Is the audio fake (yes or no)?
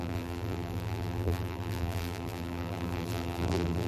yes